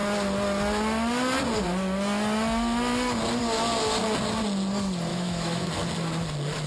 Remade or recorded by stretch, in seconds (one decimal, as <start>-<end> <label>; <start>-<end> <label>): 0.0-5.1 recorded; 5.1-5.7 remade; 5.7-6.7 recorded